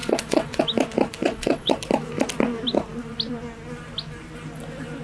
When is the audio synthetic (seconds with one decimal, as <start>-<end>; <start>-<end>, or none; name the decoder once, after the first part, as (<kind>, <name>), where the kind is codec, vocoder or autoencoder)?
0.0-0.6 (vocoder, WaveNeXt); 1.2-1.7